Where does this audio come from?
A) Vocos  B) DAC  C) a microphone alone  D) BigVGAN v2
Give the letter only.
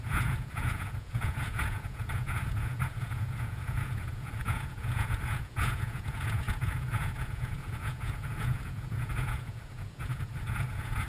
A